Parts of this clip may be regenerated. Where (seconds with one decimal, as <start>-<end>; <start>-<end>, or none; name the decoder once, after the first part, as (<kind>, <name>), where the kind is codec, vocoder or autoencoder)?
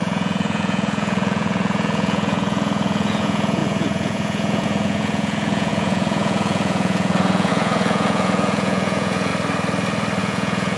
0.0-9.3 (vocoder, Vocos); 10.2-10.8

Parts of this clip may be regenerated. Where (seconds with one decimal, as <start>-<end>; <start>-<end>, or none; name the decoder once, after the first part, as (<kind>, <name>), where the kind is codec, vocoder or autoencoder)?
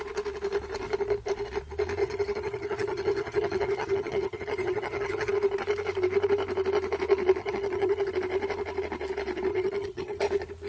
2.0-5.3 (vocoder, HiFi-GAN); 7.4-8.1; 9.5-10.2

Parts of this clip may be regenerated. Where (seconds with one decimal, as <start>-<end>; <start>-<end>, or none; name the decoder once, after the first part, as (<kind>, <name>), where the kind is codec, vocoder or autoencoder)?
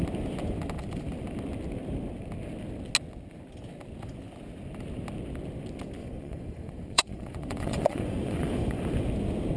6.0-8.8 (vocoder, Vocos)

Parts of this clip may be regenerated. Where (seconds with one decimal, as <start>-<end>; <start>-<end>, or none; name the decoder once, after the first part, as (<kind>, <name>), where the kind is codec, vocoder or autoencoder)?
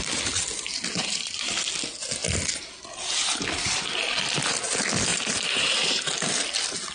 0.9-1.5 (vocoder, BigVGAN v2); 5.1-6.1